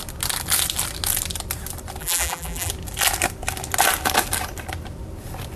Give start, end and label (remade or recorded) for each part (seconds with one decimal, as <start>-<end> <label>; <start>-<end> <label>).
0.0-2.0 recorded; 2.0-2.7 remade; 2.7-5.6 recorded